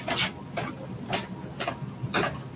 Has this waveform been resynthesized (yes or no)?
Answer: no